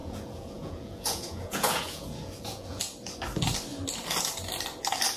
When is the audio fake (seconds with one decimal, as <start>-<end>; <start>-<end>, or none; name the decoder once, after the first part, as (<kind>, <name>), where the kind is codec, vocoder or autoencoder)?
0.0-2.8 (vocoder, Vocos)